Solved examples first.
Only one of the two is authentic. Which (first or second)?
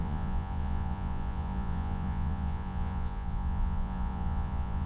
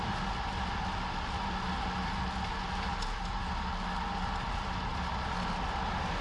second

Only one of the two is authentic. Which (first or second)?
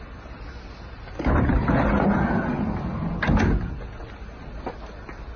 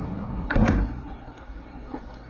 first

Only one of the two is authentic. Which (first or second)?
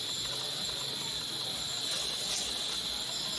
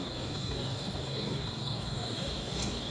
first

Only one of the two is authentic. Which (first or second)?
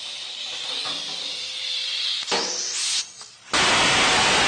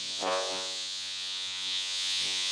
first